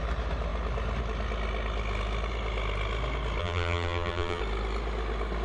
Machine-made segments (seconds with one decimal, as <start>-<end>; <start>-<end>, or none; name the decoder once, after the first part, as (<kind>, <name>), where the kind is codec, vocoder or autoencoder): 3.4-4.4 (vocoder, BigVGAN v2)